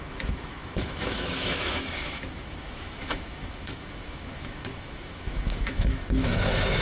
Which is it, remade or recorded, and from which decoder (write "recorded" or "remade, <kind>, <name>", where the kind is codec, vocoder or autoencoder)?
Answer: remade, autoencoder, DAC-VAE